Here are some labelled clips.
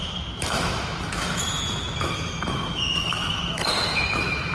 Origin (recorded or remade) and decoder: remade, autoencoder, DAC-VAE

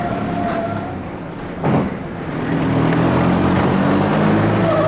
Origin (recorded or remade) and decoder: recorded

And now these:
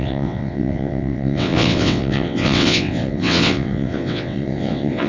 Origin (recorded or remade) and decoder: remade, vocoder, WaveNeXt